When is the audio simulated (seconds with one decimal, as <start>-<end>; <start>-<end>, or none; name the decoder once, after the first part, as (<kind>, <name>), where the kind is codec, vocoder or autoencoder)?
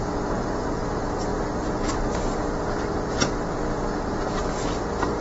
none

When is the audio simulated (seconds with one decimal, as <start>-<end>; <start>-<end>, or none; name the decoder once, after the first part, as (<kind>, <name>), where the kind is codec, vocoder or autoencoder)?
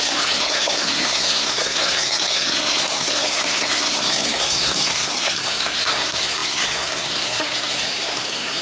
0.0-8.6 (codec, SNAC)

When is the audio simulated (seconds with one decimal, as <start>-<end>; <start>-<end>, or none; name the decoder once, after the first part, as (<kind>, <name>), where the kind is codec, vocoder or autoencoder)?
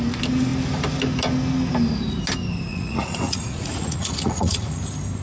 2.7-4.8 (vocoder, Vocos)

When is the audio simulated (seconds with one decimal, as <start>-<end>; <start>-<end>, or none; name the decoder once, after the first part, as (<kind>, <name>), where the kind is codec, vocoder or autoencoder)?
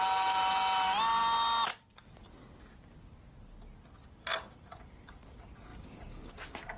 none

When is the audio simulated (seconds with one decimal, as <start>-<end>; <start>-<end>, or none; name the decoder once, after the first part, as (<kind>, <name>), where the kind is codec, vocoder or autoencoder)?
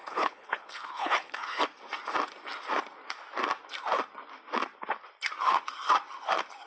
0.0-1.6 (codec, HILCodec)